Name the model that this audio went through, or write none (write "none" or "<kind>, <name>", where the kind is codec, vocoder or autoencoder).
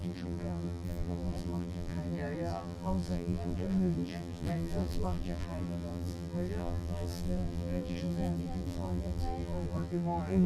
vocoder, BigVGAN v2